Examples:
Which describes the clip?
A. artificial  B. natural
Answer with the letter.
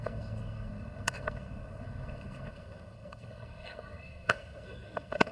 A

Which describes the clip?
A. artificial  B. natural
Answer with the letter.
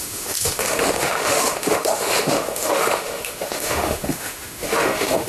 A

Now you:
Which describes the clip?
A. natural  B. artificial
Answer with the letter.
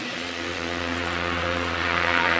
B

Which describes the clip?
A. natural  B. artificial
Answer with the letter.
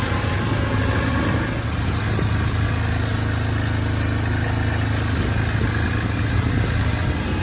A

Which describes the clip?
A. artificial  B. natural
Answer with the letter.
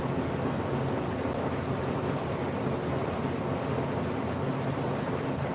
B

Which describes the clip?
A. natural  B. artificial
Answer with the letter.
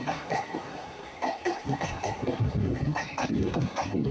B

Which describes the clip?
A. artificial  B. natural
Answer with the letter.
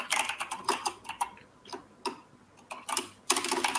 A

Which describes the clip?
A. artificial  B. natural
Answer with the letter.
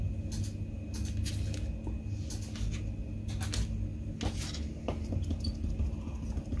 B